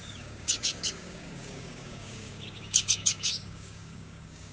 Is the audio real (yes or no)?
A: no